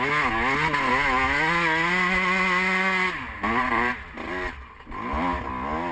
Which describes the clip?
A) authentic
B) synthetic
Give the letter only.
A